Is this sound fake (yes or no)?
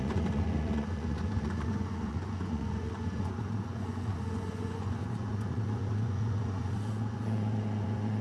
yes